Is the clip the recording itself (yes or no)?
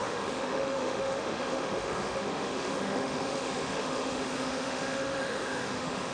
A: no